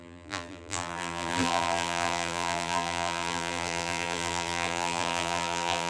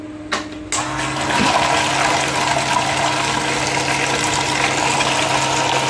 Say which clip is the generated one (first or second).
first